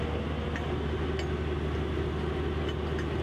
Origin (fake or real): real